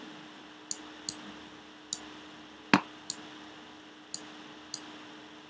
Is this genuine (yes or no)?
yes